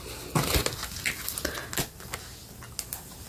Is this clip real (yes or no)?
yes